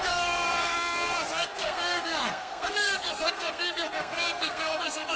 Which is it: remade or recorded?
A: remade